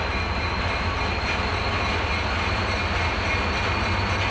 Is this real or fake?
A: real